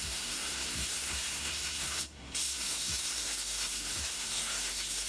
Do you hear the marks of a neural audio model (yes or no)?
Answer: yes